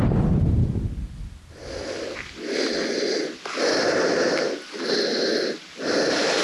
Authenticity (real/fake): real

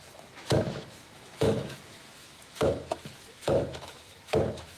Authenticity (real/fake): fake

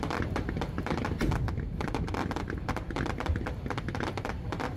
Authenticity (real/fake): fake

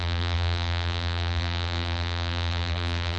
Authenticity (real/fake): fake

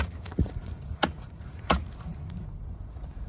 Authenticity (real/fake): fake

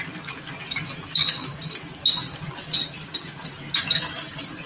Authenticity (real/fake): real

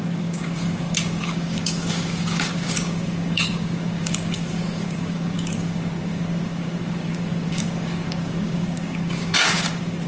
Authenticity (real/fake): fake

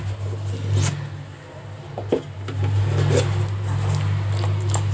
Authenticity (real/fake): real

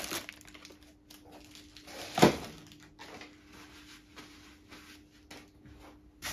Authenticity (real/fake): real